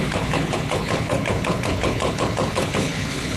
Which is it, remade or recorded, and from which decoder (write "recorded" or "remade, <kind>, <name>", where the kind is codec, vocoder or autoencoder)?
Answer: remade, codec, HILCodec